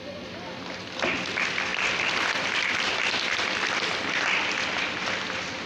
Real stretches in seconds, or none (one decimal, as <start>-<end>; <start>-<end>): 0.0-5.7